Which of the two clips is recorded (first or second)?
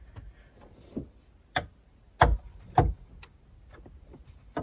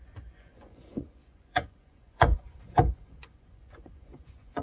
first